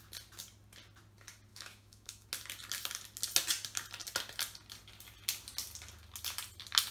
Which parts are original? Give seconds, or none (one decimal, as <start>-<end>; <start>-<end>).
0.0-1.5; 2.3-6.9